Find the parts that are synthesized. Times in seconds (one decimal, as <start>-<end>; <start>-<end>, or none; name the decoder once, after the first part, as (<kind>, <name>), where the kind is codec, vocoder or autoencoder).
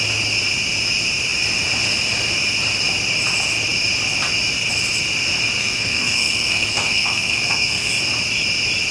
5.6-7.9 (codec, SNAC)